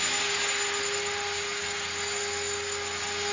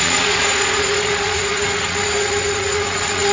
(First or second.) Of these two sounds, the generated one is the second